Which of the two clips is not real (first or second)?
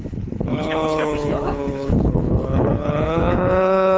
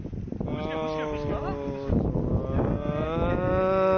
first